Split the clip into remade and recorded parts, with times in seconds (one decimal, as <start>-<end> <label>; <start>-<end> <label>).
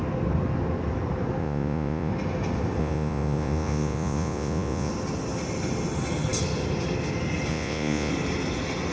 0.0-1.4 recorded; 1.4-2.1 remade; 2.1-2.8 recorded; 2.8-4.9 remade; 4.9-7.5 recorded; 7.5-8.1 remade; 8.1-8.9 recorded